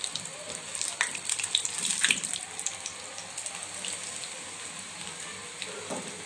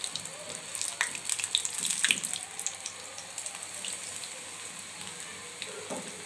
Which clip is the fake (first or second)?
first